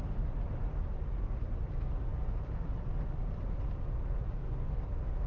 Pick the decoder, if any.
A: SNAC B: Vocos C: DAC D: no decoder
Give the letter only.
D